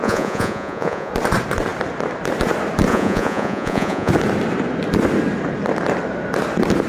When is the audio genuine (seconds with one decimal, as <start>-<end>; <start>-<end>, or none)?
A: 1.1-2.9; 4.1-6.9